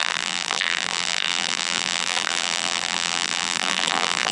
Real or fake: fake